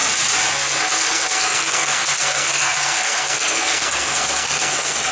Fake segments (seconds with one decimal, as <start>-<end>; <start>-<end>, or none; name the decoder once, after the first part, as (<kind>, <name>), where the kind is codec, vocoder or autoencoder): 0.5-5.1 (codec, SNAC)